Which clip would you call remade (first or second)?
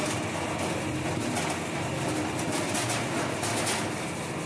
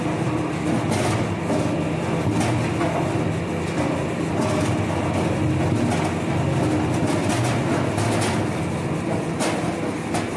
first